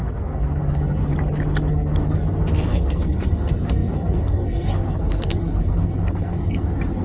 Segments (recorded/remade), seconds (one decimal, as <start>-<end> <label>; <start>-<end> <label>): 0.0-1.1 remade; 1.1-1.7 recorded; 1.7-7.0 remade